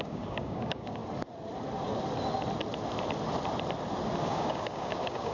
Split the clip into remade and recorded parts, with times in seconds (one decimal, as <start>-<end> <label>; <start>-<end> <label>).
0.0-1.0 remade; 1.0-4.2 recorded; 4.2-5.3 remade